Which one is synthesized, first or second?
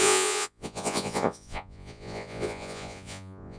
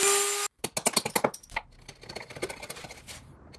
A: first